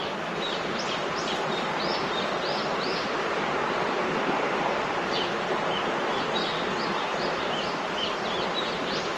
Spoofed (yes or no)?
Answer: yes